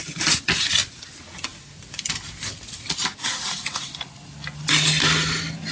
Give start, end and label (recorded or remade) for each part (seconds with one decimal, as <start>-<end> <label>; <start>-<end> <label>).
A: 0.0-1.5 recorded; 1.5-2.9 remade; 2.9-3.9 recorded; 3.9-4.9 remade; 4.9-5.7 recorded